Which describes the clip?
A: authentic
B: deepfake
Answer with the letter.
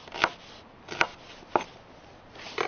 A